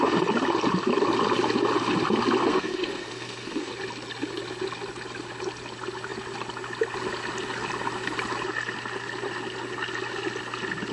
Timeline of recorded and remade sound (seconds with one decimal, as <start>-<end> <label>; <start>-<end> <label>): 0.0-2.5 recorded; 2.5-3.7 remade; 3.7-10.9 recorded